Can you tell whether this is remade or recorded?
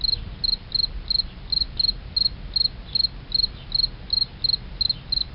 recorded